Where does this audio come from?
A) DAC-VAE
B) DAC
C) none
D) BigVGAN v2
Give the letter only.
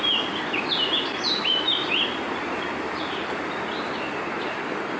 C